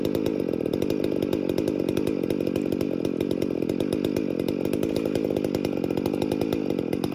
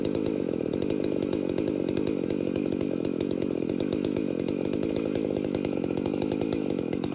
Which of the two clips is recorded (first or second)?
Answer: first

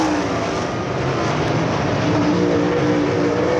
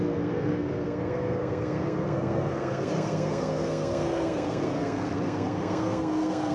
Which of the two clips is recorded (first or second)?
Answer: first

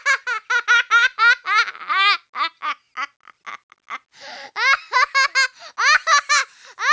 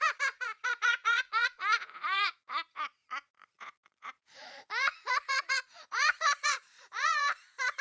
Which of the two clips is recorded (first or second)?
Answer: first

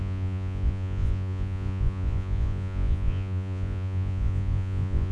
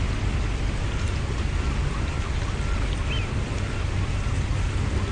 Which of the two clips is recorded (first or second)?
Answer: second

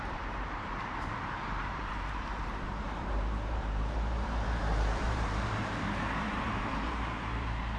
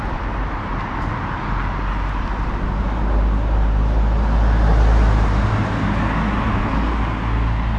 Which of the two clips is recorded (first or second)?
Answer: second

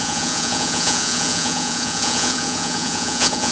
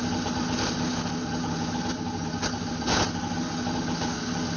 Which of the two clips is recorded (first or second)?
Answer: second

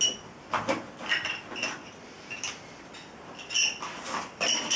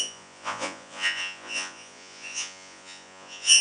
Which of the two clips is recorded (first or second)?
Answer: first